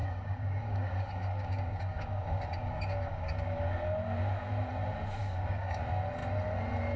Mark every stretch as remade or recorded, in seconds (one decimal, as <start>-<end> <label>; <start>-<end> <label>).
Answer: 0.0-3.7 remade; 3.7-5.2 recorded; 5.2-5.8 remade; 5.8-7.0 recorded